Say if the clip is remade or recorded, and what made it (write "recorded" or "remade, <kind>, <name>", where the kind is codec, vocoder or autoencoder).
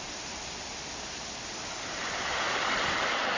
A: recorded